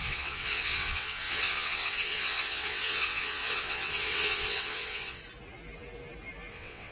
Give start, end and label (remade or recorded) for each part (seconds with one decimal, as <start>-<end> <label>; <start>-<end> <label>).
0.0-5.2 remade; 5.2-6.5 recorded; 6.5-6.9 remade